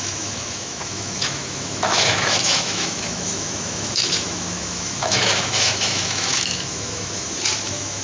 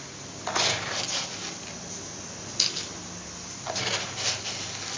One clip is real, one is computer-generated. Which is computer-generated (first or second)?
first